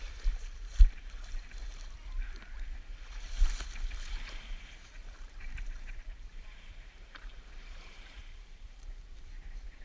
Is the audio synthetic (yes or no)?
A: yes